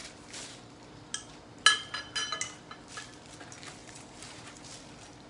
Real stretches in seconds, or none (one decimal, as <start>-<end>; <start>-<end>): 0.0-3.8; 4.7-5.3